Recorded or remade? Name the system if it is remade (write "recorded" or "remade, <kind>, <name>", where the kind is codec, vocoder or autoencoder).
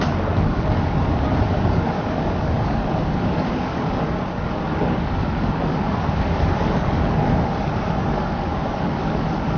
remade, codec, DAC